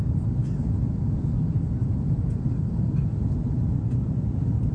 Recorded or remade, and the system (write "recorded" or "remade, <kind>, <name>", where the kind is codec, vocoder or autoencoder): remade, vocoder, BigVGAN v2